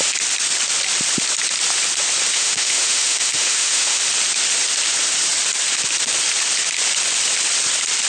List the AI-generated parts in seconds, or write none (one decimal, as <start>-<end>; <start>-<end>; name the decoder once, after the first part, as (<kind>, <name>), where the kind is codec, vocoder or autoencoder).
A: 2.3-4.0 (autoencoder, DAC-VAE)